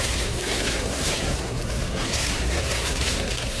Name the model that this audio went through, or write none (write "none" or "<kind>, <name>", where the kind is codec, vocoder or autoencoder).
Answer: codec, SNAC